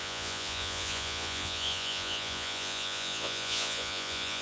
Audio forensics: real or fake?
fake